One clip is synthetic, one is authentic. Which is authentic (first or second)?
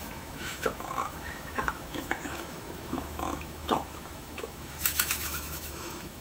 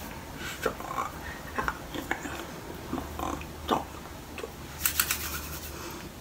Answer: second